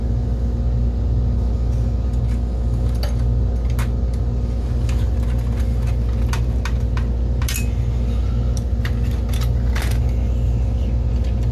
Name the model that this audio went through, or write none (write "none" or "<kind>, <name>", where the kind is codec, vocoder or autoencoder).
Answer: none